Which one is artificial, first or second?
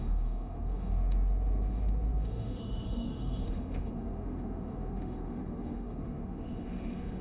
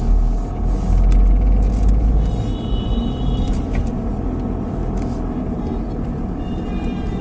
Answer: first